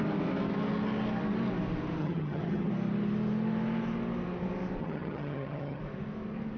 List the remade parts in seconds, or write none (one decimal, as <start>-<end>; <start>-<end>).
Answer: 2.0-2.7; 4.8-5.8